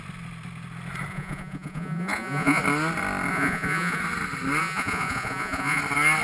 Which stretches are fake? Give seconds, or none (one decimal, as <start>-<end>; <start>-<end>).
1.1-2.6; 3.3-4.0; 4.6-5.8